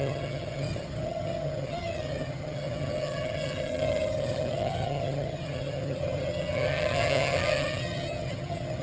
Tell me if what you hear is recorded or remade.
remade